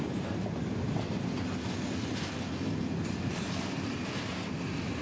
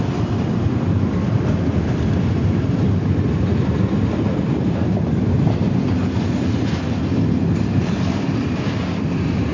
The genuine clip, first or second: first